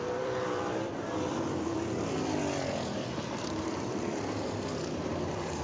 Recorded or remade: remade